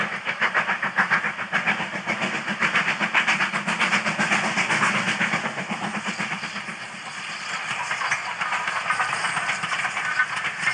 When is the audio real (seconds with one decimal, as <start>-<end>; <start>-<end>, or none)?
0.0-10.7